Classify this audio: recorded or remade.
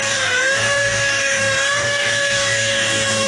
remade